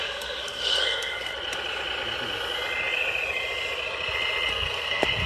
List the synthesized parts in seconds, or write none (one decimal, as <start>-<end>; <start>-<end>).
0.0-1.3; 4.5-5.3